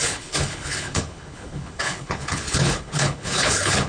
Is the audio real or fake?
fake